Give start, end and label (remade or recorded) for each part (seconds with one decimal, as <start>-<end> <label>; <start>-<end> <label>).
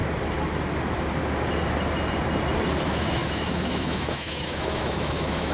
0.0-2.8 recorded; 2.8-5.5 remade